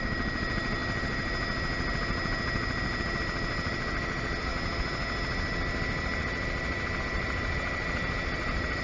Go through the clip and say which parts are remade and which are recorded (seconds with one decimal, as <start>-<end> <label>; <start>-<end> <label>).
0.0-8.8 recorded